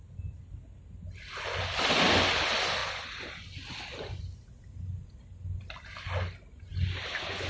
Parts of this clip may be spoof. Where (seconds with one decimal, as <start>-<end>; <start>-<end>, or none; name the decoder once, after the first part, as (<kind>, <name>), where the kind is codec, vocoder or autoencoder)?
none